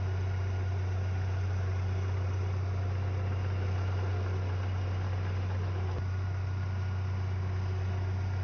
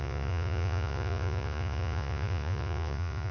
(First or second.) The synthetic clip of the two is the second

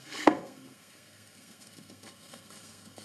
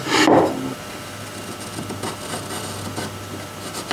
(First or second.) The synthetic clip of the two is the first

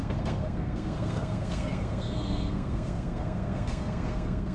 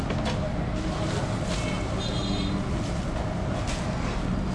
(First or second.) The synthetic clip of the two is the first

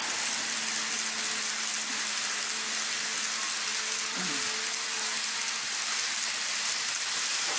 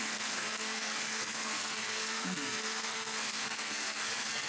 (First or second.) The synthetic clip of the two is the second